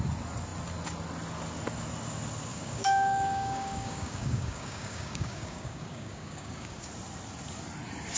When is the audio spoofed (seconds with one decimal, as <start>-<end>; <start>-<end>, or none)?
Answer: 2.5-6.9